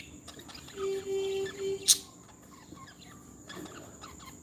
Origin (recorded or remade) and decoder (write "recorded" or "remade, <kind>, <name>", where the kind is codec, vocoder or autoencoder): recorded